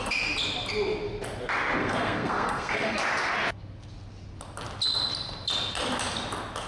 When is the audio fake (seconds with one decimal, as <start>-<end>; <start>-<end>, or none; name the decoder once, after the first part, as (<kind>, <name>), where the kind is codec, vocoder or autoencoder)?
1.8-3.0 (codec, SNAC)